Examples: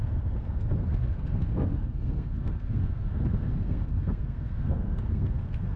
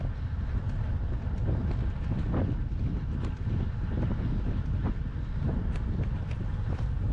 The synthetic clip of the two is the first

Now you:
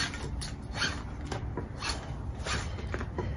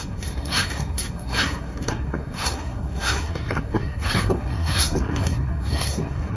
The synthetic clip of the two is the second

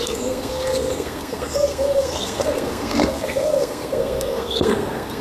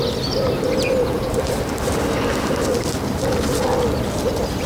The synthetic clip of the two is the first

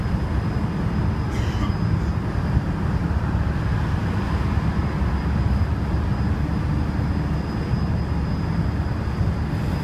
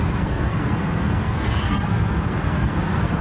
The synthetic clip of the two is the second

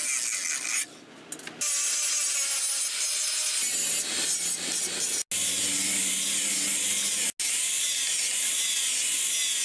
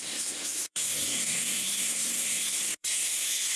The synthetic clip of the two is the second